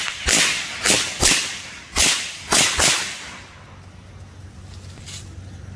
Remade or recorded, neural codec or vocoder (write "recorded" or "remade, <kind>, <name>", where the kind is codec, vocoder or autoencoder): recorded